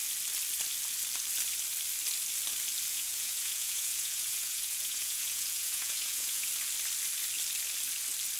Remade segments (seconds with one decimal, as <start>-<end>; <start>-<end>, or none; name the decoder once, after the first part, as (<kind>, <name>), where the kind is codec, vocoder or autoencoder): 2.9-6.5 (vocoder, Vocos)